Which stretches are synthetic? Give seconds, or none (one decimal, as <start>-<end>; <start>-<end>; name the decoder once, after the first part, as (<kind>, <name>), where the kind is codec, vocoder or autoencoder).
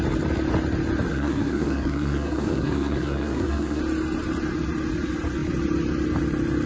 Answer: 1.1-3.8 (codec, SNAC)